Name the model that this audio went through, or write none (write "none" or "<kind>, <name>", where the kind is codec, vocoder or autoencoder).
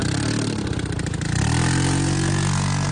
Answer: none